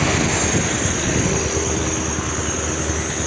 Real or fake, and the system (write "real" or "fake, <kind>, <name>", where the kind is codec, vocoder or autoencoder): real